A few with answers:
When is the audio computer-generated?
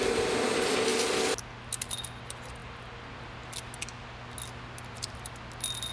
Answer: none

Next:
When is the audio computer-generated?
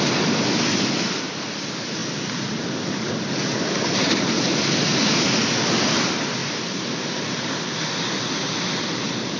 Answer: 4.0-5.4; 6.4-7.5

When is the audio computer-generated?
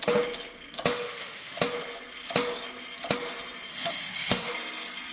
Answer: 0.9-1.6; 3.7-4.5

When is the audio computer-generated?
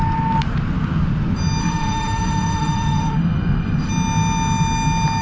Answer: 1.6-3.9